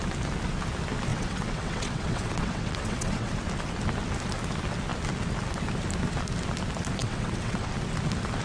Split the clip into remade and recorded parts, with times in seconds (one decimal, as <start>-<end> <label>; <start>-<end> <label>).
0.0-1.1 recorded; 1.1-3.3 remade; 3.3-7.0 recorded; 7.0-7.7 remade; 7.7-8.4 recorded